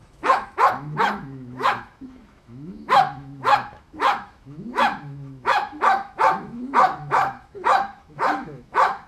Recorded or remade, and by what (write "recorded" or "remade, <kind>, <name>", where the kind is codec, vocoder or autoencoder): remade, autoencoder, DAC-VAE